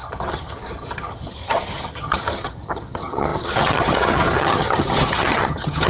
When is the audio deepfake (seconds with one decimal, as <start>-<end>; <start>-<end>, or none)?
0.0-5.9